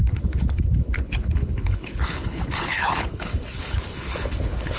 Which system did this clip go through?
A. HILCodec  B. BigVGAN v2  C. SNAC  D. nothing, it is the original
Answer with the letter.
A